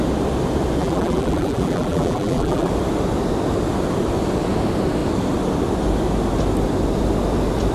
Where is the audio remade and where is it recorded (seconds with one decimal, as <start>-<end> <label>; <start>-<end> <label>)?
0.0-0.8 recorded; 0.8-2.7 remade; 2.7-7.7 recorded